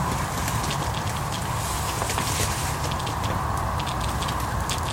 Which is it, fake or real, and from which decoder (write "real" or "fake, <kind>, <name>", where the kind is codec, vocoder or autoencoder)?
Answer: real